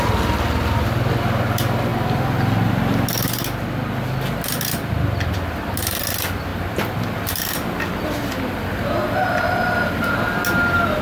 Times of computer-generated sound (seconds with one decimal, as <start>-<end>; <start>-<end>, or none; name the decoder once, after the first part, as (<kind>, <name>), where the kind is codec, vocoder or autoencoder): none